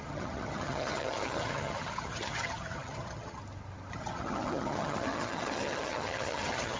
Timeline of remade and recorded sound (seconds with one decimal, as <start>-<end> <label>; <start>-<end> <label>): 0.0-3.4 remade; 3.4-3.9 recorded; 3.9-6.8 remade